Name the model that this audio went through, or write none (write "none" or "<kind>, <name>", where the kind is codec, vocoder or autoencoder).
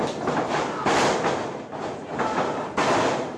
none